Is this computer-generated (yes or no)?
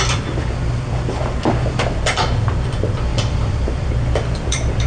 yes